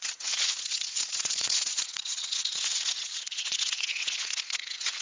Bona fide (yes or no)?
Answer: no